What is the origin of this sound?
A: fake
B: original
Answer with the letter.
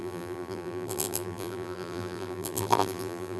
A